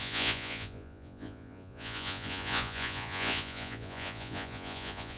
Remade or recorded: remade